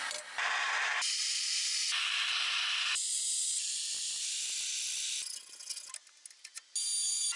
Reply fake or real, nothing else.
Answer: real